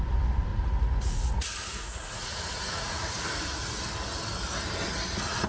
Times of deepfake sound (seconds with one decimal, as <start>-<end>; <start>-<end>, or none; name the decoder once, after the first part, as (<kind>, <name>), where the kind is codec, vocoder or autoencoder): 0.5-3.8 (vocoder, Vocos)